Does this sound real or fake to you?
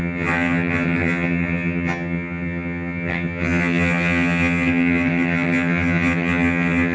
fake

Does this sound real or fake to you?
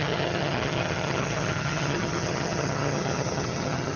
fake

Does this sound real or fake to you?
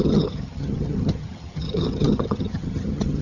fake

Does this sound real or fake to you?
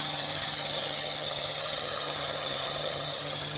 fake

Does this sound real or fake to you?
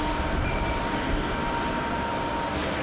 real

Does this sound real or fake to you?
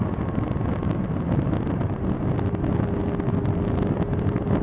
real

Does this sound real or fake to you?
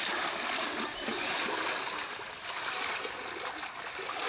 real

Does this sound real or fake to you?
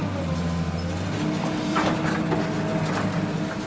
real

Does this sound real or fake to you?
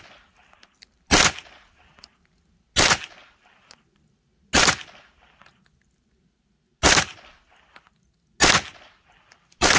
real